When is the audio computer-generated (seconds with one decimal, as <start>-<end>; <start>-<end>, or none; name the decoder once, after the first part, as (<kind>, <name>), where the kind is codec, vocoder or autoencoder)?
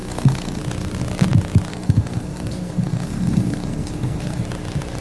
0.0-0.6 (codec, SNAC); 1.7-4.4